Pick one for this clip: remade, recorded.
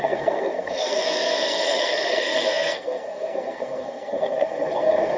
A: remade